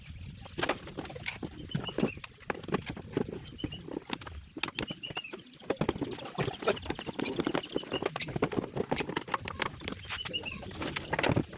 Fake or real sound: real